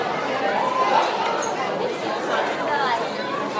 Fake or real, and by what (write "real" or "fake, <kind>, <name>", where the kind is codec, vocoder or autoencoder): real